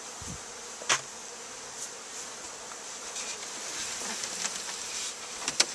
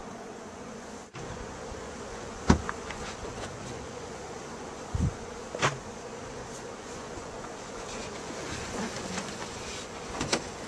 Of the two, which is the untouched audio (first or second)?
first